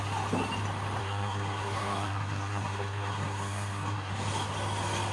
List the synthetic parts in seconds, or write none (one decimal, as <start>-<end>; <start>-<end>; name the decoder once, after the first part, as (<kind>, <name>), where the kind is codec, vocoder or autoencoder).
1.0-4.1 (codec, SNAC)